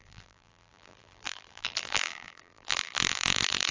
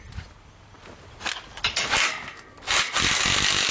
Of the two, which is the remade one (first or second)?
first